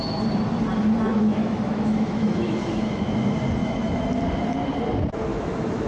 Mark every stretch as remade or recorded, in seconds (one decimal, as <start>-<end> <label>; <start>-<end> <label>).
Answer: 0.0-1.1 recorded; 1.1-3.1 remade; 3.1-3.6 recorded; 3.6-4.1 remade; 4.1-5.3 recorded; 5.3-5.9 remade